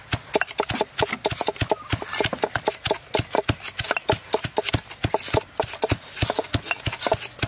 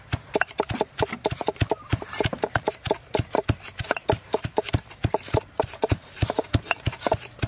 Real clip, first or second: first